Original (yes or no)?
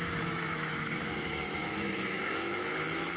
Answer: no